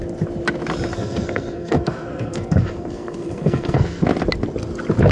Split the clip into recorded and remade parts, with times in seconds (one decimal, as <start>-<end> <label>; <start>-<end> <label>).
0.0-0.9 recorded; 0.9-4.0 remade; 4.0-5.1 recorded